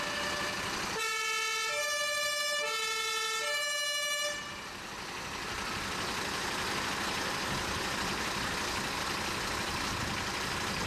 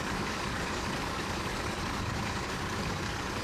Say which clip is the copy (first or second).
second